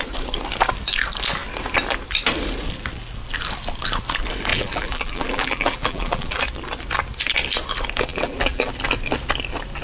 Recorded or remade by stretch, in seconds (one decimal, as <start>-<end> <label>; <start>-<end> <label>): 0.0-4.5 recorded; 4.5-6.4 remade; 6.4-8.1 recorded; 8.1-8.7 remade; 8.7-9.8 recorded